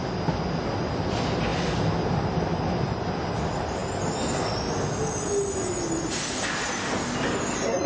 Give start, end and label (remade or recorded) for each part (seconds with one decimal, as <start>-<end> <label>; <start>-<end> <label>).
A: 0.0-7.9 recorded